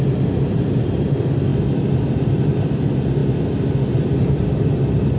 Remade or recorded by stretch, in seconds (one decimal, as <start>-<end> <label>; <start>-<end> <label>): 0.0-1.5 remade; 1.5-2.1 recorded; 2.1-3.2 remade; 3.2-5.2 recorded